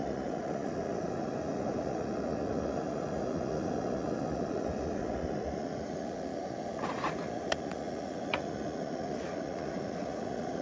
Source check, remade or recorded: remade